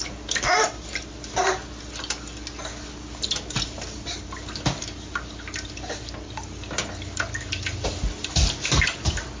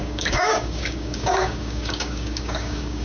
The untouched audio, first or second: first